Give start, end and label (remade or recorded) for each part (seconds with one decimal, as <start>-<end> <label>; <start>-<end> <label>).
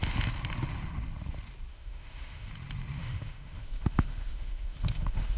0.0-1.7 recorded; 1.7-2.5 remade; 2.5-3.0 recorded; 3.0-5.4 remade